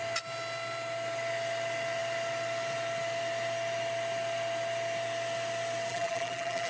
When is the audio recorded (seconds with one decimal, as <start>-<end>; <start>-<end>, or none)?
0.0-5.9